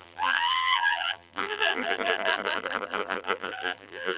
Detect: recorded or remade remade